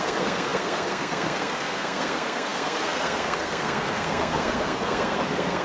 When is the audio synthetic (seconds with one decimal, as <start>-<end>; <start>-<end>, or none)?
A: 0.0-5.6